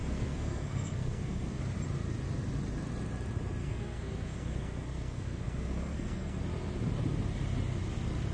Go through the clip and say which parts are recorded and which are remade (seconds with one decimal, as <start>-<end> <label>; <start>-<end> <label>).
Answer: 0.0-1.6 remade; 1.6-3.6 recorded; 3.6-6.4 remade; 6.4-8.3 recorded

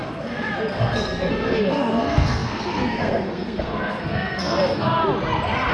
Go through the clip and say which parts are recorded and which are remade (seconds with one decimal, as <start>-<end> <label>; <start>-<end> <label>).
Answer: 0.0-5.0 remade; 5.0-5.7 recorded

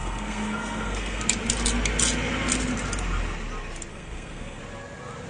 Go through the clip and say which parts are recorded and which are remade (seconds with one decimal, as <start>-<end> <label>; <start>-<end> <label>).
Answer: 0.0-1.2 remade; 1.2-3.9 recorded; 3.9-4.6 remade; 4.6-5.3 recorded

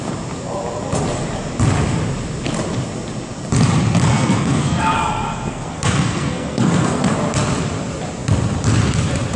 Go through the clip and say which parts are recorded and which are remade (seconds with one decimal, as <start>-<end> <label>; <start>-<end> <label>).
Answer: 0.0-4.1 recorded; 4.1-7.0 remade; 7.0-9.4 recorded

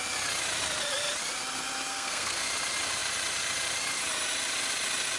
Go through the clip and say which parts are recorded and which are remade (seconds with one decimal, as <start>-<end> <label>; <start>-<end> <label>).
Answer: 0.0-1.9 recorded; 1.9-2.5 remade; 2.5-5.2 recorded

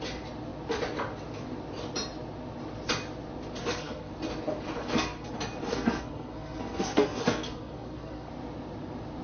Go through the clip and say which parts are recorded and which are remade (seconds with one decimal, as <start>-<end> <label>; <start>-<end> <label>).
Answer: 0.0-3.6 recorded; 3.6-4.1 remade; 4.1-4.8 recorded; 4.8-5.3 remade; 5.3-5.7 recorded; 5.7-8.3 remade; 8.3-9.2 recorded